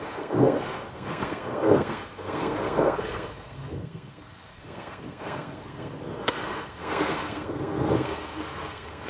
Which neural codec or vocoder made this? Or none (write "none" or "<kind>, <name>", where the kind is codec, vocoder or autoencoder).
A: codec, SNAC